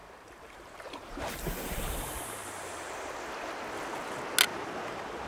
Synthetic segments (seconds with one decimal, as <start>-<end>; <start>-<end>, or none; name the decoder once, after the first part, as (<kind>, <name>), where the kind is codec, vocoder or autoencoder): 0.0-3.1 (vocoder, BigVGAN v2); 4.5-5.3